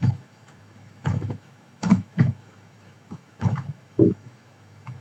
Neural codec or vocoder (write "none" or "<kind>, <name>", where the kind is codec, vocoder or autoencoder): autoencoder, DAC-VAE